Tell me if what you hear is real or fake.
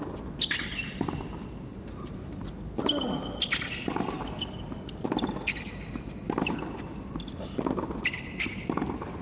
real